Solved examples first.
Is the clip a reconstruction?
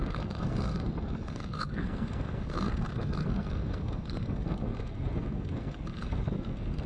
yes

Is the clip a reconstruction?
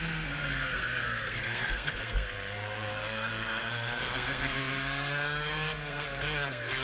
yes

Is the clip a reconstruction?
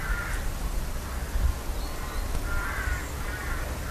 no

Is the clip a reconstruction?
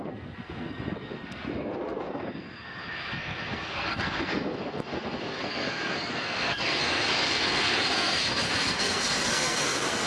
yes